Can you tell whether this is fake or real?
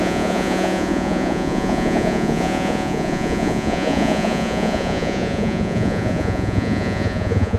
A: fake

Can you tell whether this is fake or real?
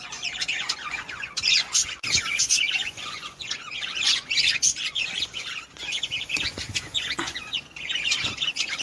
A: fake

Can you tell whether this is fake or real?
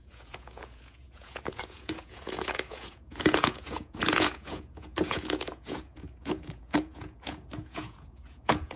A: fake